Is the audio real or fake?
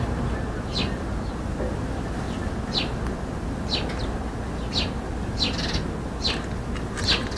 real